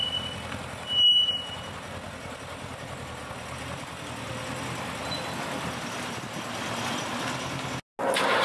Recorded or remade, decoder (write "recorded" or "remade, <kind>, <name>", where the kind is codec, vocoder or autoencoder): recorded